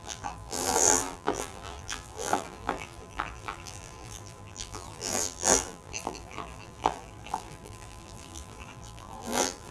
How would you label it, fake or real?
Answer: fake